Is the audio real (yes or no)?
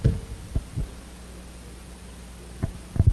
yes